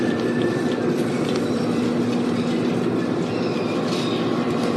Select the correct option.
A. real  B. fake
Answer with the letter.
A